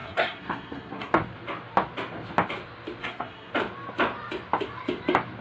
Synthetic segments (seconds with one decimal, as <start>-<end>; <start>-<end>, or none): 0.0-1.1; 3.0-3.5